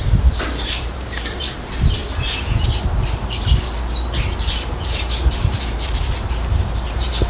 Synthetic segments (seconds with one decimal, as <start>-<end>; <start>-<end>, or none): 0.0-2.0; 4.4-7.3